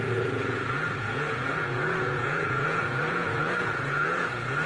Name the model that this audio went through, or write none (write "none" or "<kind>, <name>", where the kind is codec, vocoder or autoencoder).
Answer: vocoder, Vocos